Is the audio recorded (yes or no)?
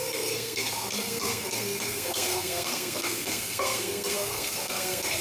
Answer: no